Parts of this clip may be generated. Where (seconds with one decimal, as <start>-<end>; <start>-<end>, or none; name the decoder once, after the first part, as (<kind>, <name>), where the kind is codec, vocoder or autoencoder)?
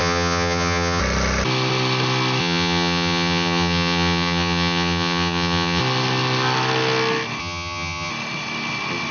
0.0-1.0 (vocoder, HiFi-GAN); 2.4-5.8; 7.4-8.1